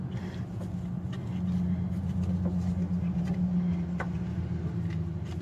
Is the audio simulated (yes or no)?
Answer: no